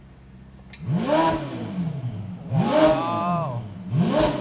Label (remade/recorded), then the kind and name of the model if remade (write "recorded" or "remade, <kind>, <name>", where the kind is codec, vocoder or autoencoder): recorded